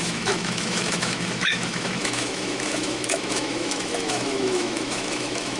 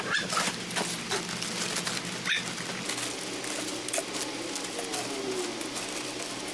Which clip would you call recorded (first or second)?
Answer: second